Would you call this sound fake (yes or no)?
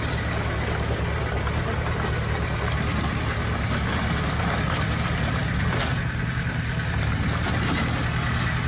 no